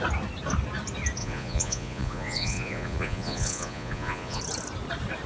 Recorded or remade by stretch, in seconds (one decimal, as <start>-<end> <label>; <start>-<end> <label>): 0.0-1.2 recorded; 1.2-4.4 remade; 4.4-5.3 recorded